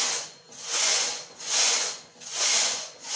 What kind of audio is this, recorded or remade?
remade